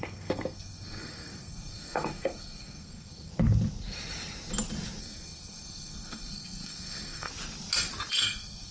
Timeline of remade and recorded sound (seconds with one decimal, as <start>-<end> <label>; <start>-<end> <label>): 0.0-3.3 remade; 3.3-5.0 recorded; 5.0-7.3 remade; 7.3-8.1 recorded; 8.1-8.7 remade